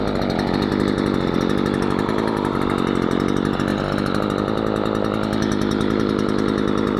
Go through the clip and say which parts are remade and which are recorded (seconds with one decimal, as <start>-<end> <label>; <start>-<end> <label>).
0.0-3.7 recorded; 3.7-4.2 remade; 4.2-7.0 recorded